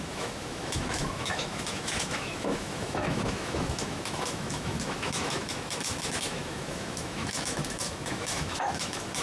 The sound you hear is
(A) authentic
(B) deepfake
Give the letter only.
B